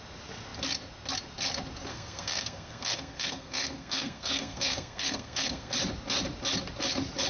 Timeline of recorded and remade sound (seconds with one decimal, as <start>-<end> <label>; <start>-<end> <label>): 0.0-1.9 recorded; 1.9-5.7 remade; 5.7-7.3 recorded